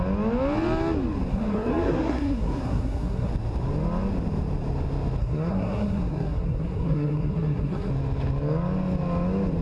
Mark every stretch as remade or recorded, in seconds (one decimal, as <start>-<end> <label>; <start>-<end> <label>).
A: 0.0-1.3 recorded; 1.3-3.3 remade; 3.3-5.2 recorded; 5.2-7.9 remade; 7.9-9.6 recorded